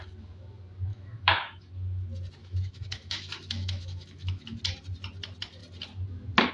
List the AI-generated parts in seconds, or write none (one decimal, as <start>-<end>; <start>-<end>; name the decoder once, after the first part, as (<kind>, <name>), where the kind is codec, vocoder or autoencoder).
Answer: 0.9-1.7 (autoencoder, DAC-VAE); 2.4-4.6